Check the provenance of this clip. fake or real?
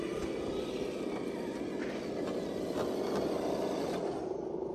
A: real